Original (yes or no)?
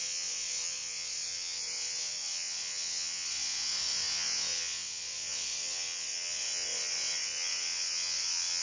no